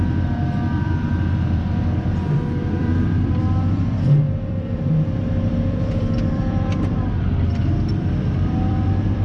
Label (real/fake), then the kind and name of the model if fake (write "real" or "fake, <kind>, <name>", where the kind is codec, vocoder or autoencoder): fake, vocoder, BigVGAN v2